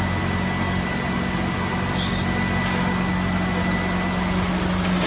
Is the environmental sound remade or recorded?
recorded